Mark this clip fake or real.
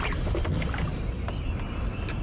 real